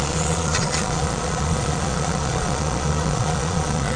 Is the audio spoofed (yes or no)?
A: yes